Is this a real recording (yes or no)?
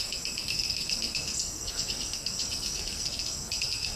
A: no